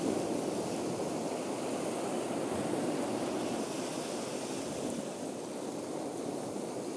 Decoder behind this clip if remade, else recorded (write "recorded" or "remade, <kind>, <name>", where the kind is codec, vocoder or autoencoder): recorded